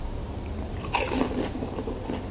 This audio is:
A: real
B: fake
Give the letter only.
A